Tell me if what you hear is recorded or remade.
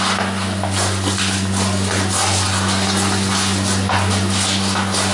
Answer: recorded